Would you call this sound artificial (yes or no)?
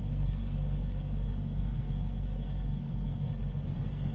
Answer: yes